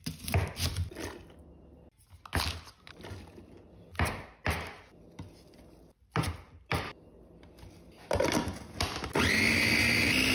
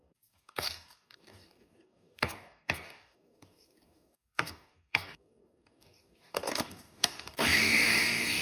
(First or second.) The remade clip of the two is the second